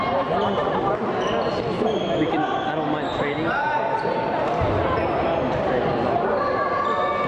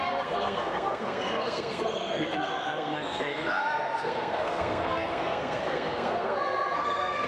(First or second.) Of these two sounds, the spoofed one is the second